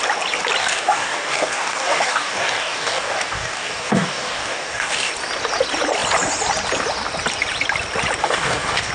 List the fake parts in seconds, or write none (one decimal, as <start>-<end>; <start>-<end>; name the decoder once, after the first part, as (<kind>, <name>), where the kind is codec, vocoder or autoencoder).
0.6-5.1 (codec, DAC); 8.2-8.9